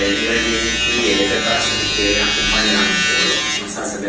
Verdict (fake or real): real